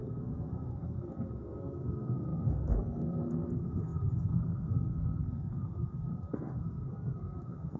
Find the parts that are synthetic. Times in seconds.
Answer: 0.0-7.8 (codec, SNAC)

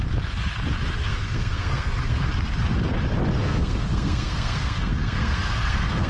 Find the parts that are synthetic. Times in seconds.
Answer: 1.1-2.2 (codec, SNAC); 3.4-6.1